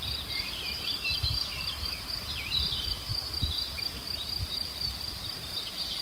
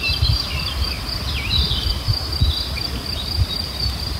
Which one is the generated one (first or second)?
first